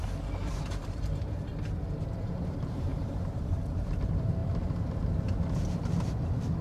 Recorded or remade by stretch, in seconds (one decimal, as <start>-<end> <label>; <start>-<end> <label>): 0.0-0.6 recorded; 0.6-1.5 remade; 1.5-2.0 recorded; 2.0-4.4 remade; 4.4-6.0 recorded; 6.0-6.6 remade